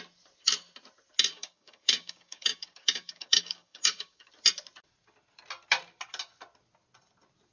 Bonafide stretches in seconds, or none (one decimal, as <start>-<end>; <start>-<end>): 0.0-1.3; 4.3-7.5